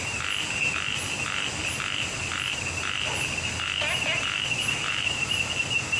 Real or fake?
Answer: real